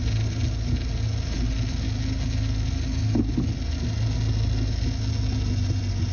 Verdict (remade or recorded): recorded